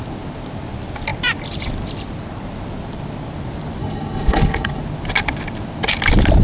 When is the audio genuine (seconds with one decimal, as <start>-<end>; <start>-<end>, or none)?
0.0-3.8; 4.8-6.4